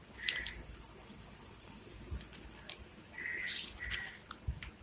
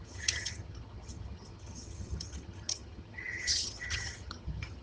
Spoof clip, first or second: second